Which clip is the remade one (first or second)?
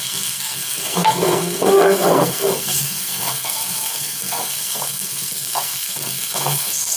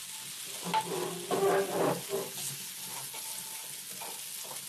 first